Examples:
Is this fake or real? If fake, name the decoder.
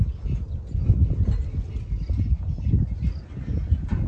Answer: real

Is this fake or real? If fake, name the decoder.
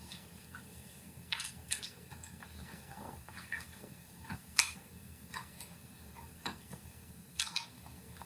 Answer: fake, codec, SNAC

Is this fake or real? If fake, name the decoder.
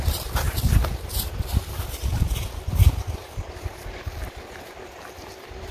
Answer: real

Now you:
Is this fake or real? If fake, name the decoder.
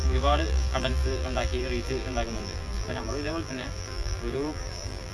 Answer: fake, vocoder, BigVGAN v2